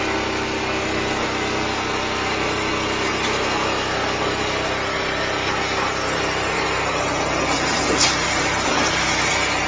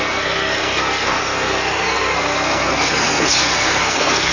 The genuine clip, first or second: first